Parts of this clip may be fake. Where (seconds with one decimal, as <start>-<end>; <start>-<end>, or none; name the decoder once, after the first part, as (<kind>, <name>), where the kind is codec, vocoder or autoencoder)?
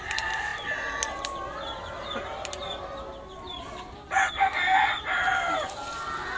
none